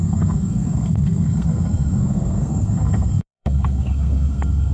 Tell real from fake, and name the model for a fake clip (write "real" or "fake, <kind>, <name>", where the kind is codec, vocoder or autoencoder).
fake, codec, SNAC